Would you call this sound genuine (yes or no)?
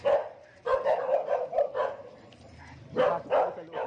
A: yes